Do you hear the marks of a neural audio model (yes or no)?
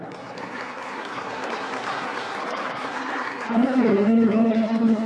yes